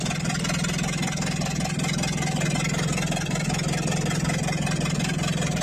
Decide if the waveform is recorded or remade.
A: recorded